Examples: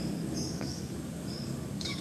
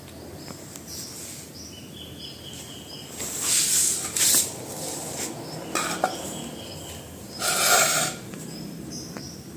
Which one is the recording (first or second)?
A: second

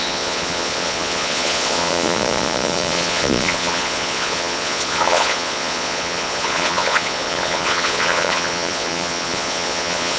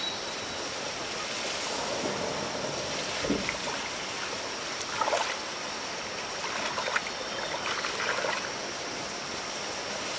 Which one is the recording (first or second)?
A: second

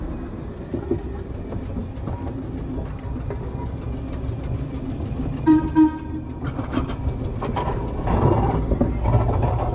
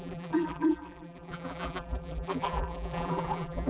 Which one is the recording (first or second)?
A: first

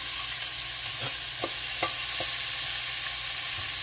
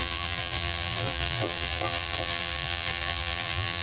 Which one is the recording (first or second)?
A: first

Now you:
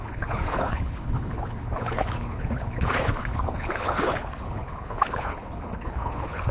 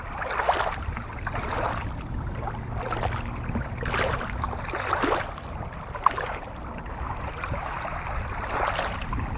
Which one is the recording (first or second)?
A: second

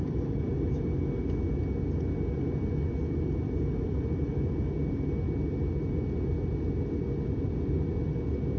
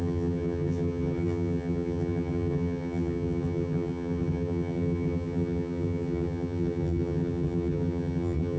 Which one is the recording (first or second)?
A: first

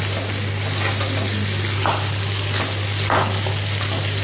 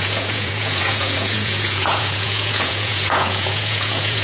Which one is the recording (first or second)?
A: first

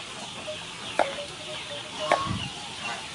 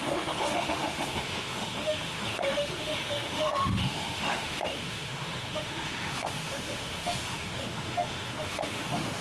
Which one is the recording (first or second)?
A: first